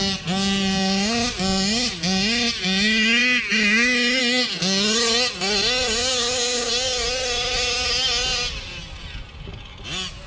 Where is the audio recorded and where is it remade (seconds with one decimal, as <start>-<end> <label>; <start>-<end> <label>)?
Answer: 0.0-6.0 recorded; 6.0-6.7 remade; 6.7-10.3 recorded